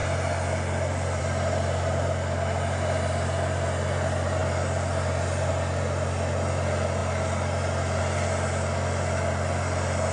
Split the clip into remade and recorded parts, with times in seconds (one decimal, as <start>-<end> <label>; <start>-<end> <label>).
0.0-10.1 recorded